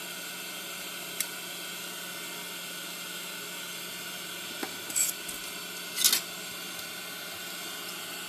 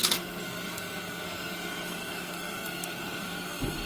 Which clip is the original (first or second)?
first